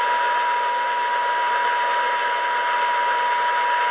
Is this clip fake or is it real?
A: real